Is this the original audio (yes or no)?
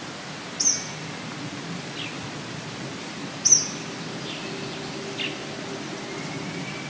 yes